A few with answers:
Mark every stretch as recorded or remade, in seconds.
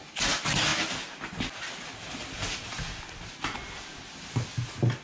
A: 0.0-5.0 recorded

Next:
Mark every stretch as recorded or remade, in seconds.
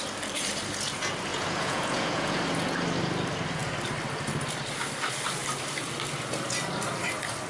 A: 0.0-1.3 recorded; 1.3-2.4 remade; 2.4-7.5 recorded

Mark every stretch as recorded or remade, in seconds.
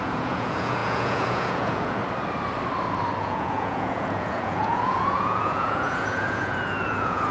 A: 0.0-2.0 remade; 2.0-3.2 recorded; 3.2-7.3 remade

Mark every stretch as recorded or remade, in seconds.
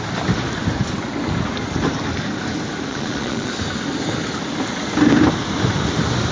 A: 0.0-2.9 recorded; 2.9-3.5 remade; 3.5-6.3 recorded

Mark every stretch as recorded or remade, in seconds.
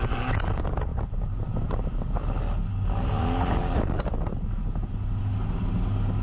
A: 0.0-6.2 recorded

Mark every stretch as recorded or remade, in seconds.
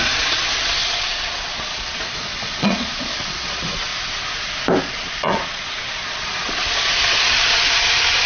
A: 0.0-3.9 remade; 3.9-4.8 recorded; 4.8-8.3 remade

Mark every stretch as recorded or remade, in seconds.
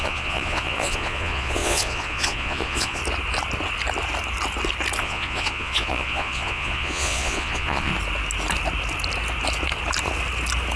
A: 0.0-3.0 remade; 3.0-5.0 recorded; 5.0-7.9 remade; 7.9-10.8 recorded